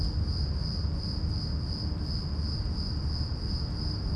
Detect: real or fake real